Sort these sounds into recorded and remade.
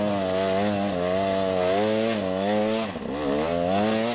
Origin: recorded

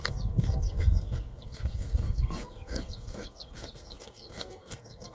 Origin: remade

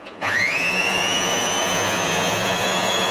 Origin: remade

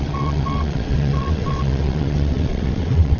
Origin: remade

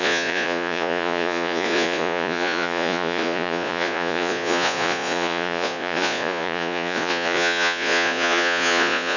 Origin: remade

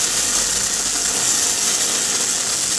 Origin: recorded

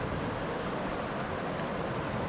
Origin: recorded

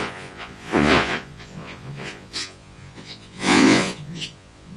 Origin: remade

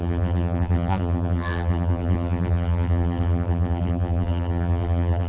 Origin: remade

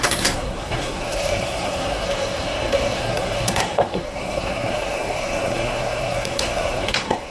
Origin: remade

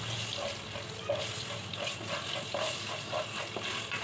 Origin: recorded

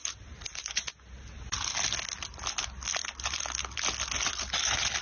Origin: recorded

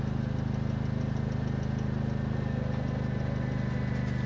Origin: recorded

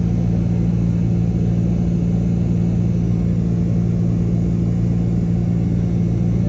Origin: recorded